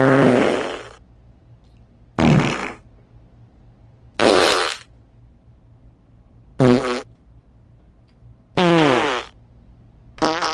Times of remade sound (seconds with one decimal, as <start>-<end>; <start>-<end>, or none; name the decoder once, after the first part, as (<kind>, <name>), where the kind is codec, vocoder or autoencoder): none